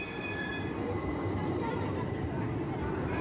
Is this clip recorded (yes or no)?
yes